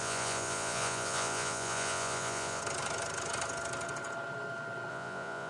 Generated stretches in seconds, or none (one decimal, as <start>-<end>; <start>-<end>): 0.0-2.6; 4.9-5.5